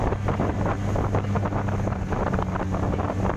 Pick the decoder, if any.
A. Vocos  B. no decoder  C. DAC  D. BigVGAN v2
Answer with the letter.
B